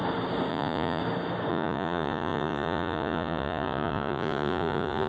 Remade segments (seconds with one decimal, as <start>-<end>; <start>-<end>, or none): 0.5-1.0; 1.5-5.1